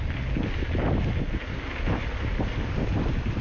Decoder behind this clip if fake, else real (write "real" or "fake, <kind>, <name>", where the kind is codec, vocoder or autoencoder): real